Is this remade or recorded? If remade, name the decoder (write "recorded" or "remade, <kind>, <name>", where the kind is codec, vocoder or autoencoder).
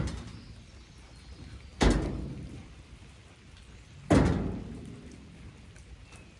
recorded